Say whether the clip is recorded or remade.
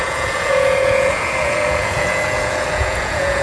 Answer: remade